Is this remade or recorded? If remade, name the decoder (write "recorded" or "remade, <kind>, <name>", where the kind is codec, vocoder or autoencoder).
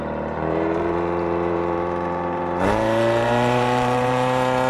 remade, vocoder, BigVGAN v2